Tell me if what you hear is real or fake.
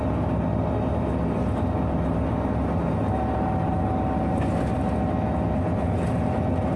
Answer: real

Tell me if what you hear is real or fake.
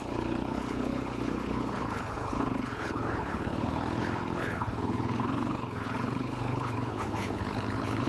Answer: fake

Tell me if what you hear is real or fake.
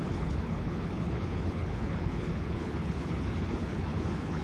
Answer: fake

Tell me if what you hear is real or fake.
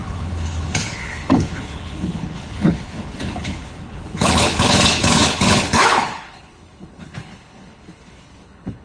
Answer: fake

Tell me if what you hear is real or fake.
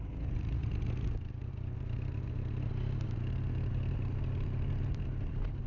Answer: real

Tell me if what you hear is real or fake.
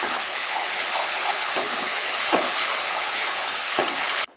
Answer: fake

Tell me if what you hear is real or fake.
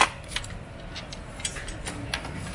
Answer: real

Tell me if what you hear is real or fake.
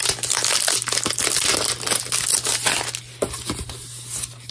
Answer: real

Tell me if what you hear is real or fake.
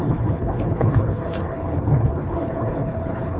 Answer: fake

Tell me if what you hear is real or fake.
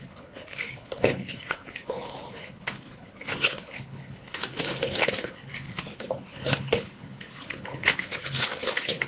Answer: fake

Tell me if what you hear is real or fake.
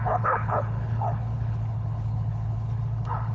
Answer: fake